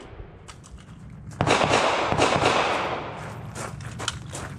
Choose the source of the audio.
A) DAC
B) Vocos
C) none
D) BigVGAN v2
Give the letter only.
C